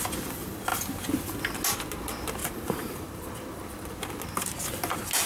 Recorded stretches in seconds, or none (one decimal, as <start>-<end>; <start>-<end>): 0.0-2.4; 3.7-5.3